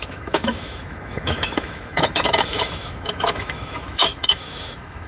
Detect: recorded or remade remade